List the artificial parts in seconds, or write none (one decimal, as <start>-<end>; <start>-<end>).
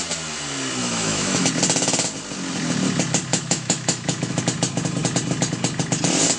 0.8-1.5; 3.3-4.4